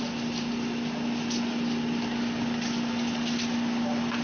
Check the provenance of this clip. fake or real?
real